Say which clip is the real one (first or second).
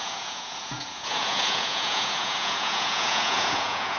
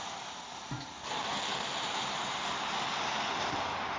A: second